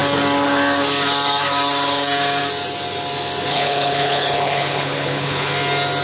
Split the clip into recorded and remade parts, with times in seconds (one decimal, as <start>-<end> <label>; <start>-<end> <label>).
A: 0.0-3.5 recorded; 3.5-5.5 remade; 5.5-6.0 recorded